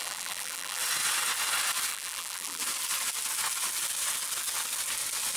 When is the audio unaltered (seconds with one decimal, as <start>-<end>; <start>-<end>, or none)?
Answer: 0.8-1.9; 2.6-5.4